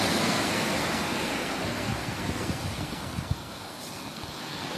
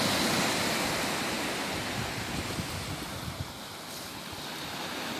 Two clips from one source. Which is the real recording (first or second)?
second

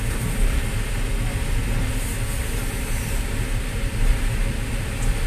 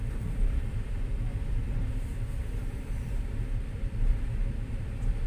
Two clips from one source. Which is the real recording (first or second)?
first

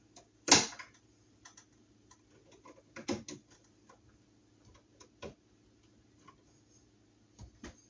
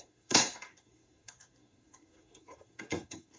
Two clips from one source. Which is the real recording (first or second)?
first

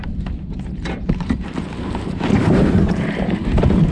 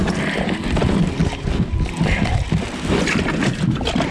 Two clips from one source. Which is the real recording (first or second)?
second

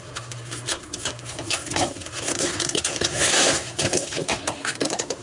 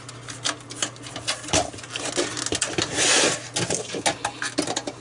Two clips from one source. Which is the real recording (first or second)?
second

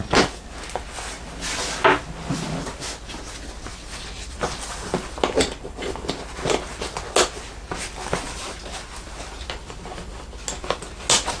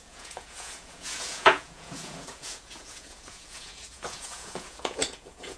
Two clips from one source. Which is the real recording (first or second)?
first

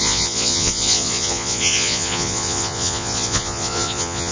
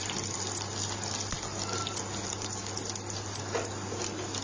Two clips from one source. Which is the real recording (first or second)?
second